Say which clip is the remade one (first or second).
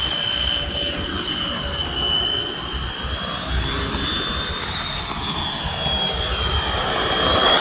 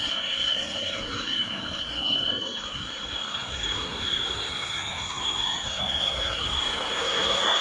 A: second